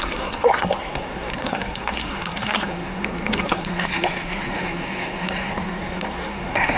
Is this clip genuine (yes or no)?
no